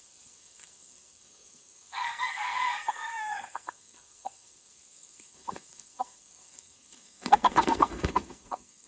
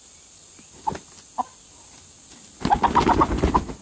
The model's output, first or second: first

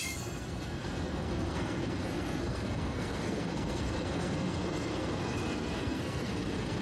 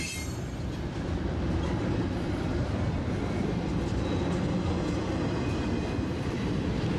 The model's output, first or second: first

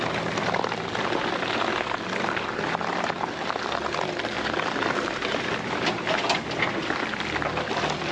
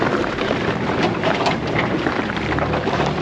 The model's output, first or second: second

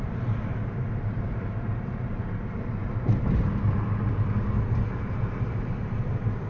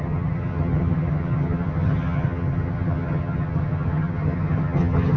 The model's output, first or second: second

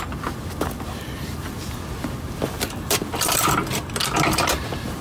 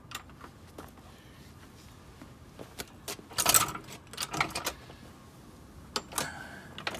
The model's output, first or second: first